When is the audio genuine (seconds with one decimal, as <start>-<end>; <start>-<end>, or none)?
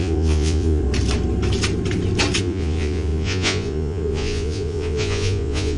0.8-2.4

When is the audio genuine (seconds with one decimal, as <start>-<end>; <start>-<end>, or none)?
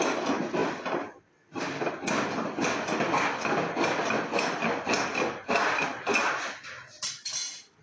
0.0-7.8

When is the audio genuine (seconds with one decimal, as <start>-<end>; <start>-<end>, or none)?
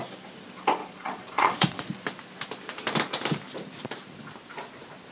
0.0-0.8; 1.9-5.1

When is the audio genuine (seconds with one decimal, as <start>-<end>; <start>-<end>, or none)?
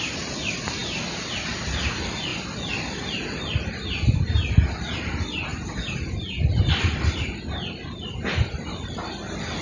0.0-9.6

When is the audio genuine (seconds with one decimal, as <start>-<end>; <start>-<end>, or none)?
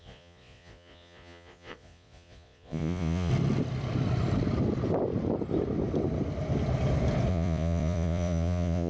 3.3-7.3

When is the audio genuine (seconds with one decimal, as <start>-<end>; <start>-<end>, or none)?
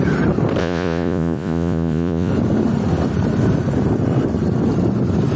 0.0-0.6; 2.3-5.4